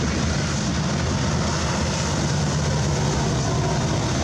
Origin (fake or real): real